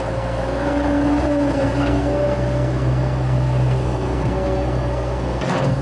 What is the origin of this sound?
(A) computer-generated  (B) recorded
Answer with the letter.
A